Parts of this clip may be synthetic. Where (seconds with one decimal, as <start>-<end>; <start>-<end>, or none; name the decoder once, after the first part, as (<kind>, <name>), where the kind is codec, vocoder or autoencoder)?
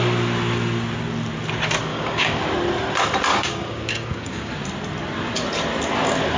1.9-2.4 (codec, DAC); 3.3-4.5